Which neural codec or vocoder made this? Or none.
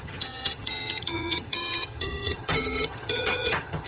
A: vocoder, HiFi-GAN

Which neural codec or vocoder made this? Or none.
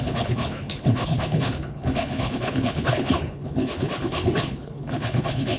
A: codec, HILCodec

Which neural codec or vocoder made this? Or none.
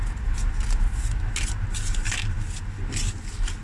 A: none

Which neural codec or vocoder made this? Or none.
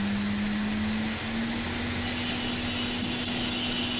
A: none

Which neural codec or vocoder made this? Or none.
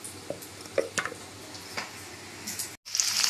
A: none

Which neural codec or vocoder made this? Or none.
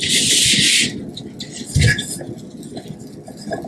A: none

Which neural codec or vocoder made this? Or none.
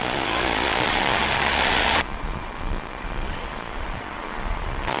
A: vocoder, Vocos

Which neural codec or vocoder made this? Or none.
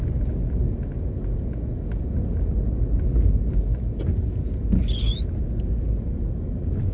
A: none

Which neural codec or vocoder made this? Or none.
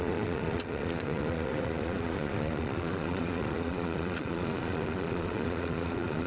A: vocoder, Vocos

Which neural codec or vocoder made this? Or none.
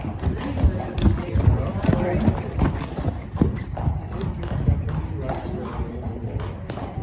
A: none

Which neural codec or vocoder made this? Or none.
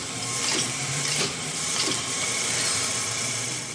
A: vocoder, BigVGAN v2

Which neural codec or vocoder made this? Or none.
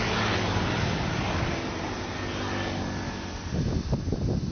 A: none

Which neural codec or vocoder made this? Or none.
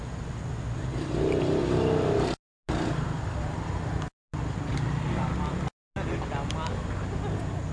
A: none